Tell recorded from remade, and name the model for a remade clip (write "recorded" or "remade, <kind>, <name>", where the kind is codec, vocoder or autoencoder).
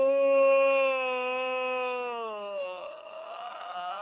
remade, codec, DAC